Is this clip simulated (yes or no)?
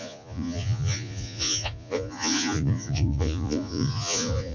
yes